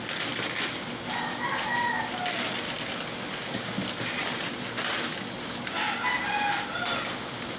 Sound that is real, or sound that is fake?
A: real